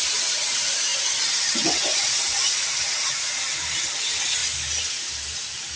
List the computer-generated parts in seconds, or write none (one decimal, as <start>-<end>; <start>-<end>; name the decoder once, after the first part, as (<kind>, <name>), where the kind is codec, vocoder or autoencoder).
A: 1.9-3.4 (vocoder, Vocos)